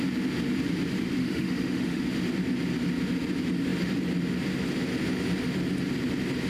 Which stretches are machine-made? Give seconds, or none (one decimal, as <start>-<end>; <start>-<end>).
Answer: 1.2-2.0